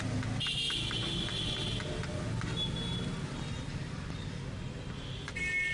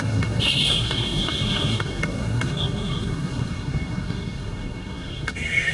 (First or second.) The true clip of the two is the first